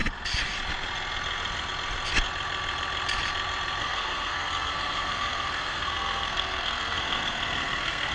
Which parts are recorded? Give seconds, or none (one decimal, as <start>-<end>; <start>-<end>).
0.0-3.8

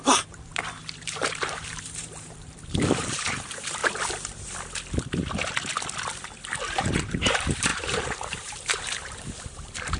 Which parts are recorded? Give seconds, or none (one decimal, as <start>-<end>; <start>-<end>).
3.8-6.8